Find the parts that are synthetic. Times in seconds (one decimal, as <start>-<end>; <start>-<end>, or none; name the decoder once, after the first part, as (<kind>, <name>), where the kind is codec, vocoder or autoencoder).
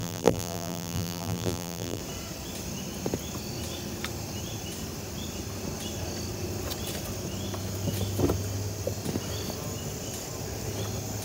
0.0-2.0 (vocoder, BigVGAN v2)